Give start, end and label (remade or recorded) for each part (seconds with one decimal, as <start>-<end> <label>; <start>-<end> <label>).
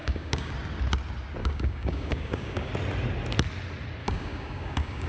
0.0-0.5 remade; 0.5-1.4 recorded; 1.4-2.7 remade; 2.7-4.0 recorded; 4.0-5.1 remade